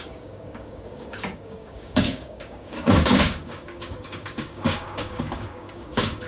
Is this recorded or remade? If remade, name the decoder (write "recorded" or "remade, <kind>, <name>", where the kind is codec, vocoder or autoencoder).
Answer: remade, codec, DAC